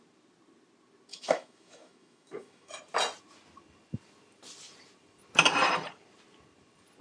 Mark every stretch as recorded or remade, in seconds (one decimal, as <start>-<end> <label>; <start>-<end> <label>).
0.0-1.1 recorded; 1.1-2.8 remade; 2.8-7.0 recorded